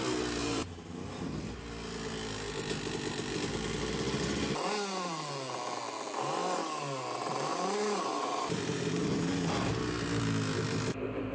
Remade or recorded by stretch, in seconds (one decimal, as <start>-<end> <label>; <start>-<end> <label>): 0.0-0.4 recorded; 0.4-0.9 remade; 0.9-7.5 recorded; 7.5-9.2 remade; 9.2-11.3 recorded